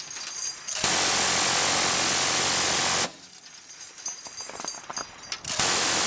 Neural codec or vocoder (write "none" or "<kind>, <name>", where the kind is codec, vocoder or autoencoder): none